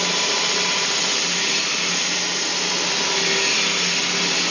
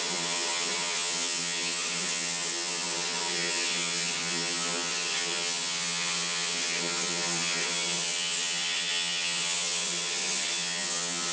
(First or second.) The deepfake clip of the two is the second